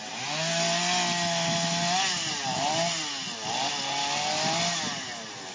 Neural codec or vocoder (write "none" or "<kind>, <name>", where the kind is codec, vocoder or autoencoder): none